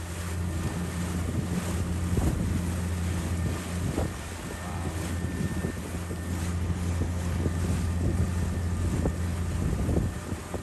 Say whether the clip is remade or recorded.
recorded